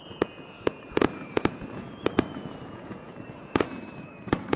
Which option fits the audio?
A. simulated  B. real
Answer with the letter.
A